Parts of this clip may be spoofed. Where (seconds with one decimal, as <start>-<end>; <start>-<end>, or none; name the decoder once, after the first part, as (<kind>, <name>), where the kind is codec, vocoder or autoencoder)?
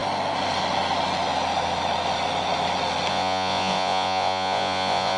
3.1-5.2 (vocoder, Vocos)